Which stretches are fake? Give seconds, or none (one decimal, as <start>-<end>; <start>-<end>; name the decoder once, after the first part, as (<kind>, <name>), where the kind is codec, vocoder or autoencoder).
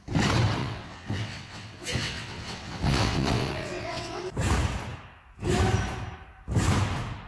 0.6-4.2 (vocoder, WaveNeXt)